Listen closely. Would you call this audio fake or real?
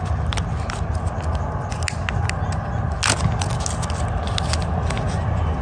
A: real